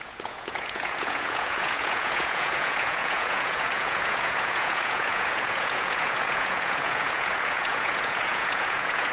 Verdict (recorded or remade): remade